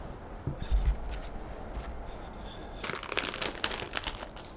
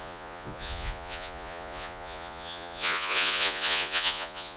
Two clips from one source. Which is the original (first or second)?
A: first